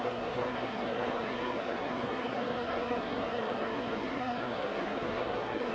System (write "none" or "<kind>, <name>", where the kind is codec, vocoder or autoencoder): codec, SNAC